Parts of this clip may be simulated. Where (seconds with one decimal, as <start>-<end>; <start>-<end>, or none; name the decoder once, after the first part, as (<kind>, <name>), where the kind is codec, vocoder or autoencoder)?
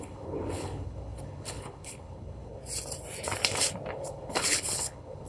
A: 0.0-2.6 (codec, HILCodec); 3.9-5.3